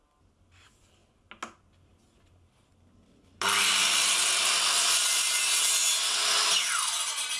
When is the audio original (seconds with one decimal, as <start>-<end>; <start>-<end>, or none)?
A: 0.0-7.4